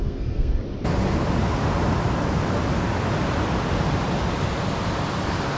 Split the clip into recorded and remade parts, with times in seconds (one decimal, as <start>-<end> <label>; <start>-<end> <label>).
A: 0.0-0.6 remade; 0.6-5.6 recorded